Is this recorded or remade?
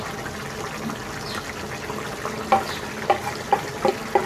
recorded